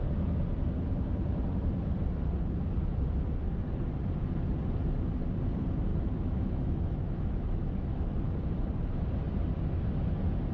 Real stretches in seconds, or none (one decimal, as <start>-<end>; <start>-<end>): 0.0-5.9; 8.2-10.5